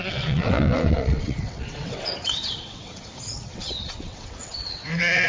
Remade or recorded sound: remade